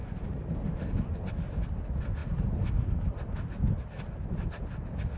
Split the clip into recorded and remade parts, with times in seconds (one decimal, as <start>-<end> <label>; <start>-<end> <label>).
0.0-0.8 remade; 0.8-5.2 recorded